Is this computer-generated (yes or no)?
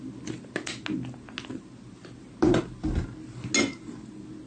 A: no